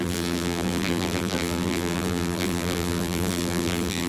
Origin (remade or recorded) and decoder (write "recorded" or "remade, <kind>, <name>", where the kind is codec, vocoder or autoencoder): remade, vocoder, BigVGAN v2